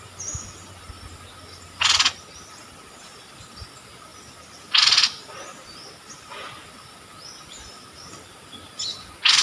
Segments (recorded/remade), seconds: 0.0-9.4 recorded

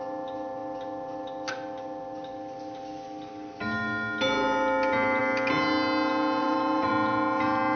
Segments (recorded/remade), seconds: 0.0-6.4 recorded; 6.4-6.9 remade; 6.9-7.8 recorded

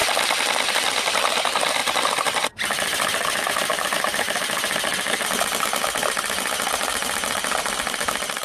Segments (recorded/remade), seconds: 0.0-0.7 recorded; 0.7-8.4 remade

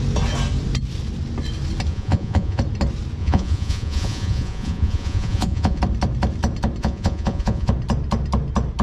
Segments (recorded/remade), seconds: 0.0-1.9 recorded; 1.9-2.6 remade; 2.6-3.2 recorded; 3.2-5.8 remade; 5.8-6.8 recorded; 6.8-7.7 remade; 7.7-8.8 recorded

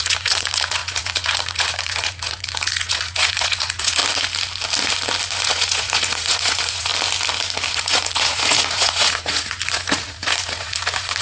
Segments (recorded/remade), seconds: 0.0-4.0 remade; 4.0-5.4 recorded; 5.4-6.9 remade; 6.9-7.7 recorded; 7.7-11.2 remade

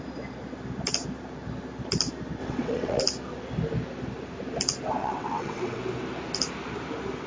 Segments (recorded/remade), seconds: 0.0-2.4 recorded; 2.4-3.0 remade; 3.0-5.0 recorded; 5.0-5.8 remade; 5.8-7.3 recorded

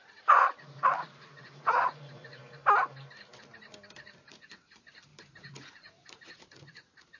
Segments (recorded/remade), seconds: 0.0-2.4 remade; 2.4-4.3 recorded; 4.3-5.1 remade; 5.1-5.6 recorded; 5.6-7.2 remade